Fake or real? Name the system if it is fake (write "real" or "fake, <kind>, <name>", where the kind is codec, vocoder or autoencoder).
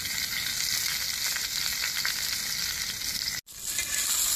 real